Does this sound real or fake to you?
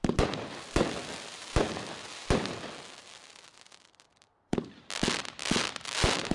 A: real